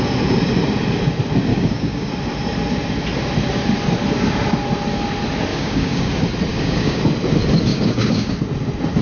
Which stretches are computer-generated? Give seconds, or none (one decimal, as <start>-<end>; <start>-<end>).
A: 1.5-2.1; 5.5-6.1; 6.5-7.0; 7.7-8.3